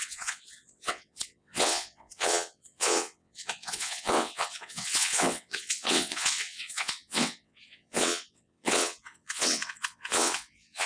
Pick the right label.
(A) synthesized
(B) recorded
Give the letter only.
A